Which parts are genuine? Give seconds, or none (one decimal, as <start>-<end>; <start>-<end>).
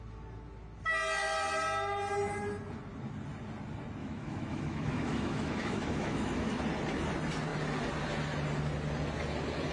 0.0-4.0; 6.6-9.7